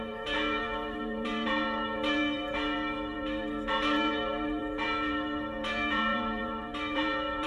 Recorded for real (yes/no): no